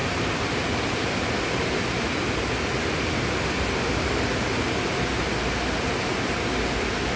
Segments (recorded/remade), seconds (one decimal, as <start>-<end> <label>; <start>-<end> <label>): 0.0-7.2 recorded